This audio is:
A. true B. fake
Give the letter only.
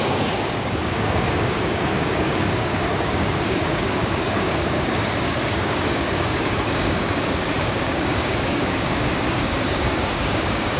B